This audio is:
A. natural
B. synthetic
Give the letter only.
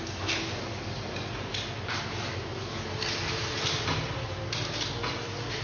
A